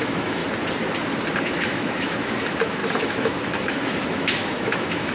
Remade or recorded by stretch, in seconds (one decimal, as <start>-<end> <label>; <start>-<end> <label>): 0.0-0.4 remade; 0.4-1.4 recorded; 1.4-5.1 remade

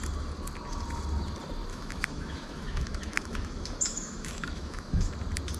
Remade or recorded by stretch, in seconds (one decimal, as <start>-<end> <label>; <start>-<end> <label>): 0.0-1.7 recorded; 1.7-5.1 remade; 5.1-5.6 recorded

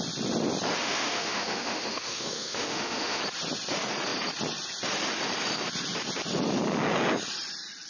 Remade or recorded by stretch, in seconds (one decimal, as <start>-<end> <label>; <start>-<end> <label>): 0.0-0.8 recorded; 0.8-3.2 remade; 3.2-7.9 recorded

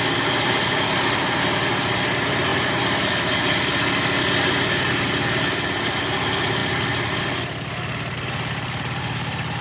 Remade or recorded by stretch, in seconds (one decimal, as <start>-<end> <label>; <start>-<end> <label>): 0.0-9.6 recorded